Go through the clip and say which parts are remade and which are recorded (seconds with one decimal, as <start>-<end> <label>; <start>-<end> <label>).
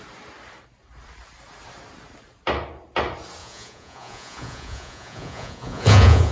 0.0-3.4 recorded; 3.4-6.3 remade